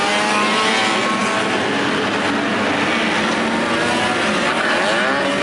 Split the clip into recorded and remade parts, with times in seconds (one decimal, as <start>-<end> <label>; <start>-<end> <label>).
0.0-5.4 recorded